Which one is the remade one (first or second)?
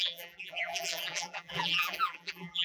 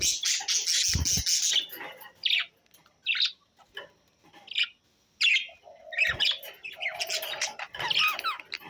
first